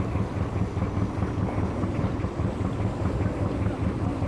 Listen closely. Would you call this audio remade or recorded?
recorded